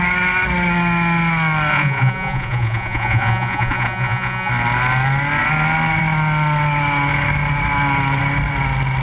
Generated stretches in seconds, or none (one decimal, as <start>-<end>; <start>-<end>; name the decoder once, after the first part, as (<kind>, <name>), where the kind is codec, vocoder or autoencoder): 1.7-4.5 (vocoder, Vocos)